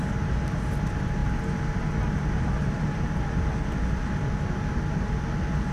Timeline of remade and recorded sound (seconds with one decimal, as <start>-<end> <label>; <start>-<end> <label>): 0.0-5.7 recorded